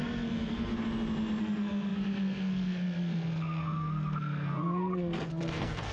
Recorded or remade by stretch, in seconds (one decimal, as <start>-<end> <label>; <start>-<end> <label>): 0.0-0.7 remade; 0.7-1.4 recorded; 1.4-5.9 remade

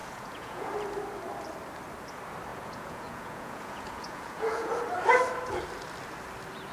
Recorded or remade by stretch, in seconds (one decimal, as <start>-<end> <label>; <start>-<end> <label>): 0.0-0.7 remade; 0.7-2.5 recorded; 2.5-4.7 remade; 4.7-6.7 recorded

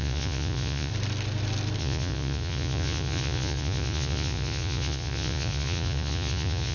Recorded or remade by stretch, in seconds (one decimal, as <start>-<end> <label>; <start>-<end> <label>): 0.0-0.9 remade; 0.9-1.8 recorded; 1.8-6.7 remade

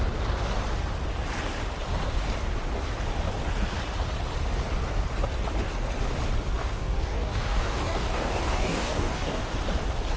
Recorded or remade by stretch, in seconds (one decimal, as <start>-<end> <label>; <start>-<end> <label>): 0.0-6.6 recorded; 6.6-9.4 remade; 9.4-10.2 recorded

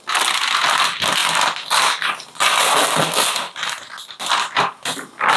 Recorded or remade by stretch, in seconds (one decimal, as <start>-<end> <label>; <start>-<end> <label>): 0.0-5.4 recorded

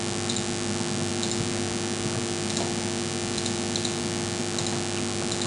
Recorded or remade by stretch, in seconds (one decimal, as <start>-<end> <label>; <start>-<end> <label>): 0.0-5.5 recorded

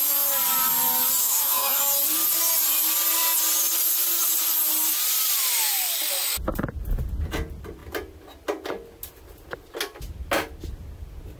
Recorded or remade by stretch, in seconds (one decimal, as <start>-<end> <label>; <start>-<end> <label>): 0.0-1.2 recorded; 1.2-1.8 remade; 1.8-11.4 recorded